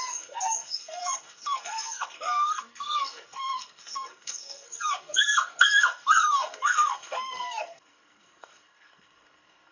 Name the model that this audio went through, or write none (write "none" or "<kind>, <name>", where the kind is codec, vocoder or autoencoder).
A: codec, SNAC